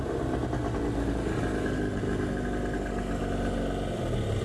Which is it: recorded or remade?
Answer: recorded